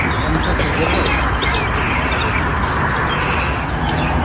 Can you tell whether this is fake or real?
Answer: real